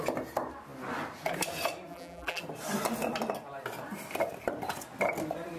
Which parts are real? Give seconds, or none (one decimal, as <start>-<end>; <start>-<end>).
0.0-1.9; 2.4-5.6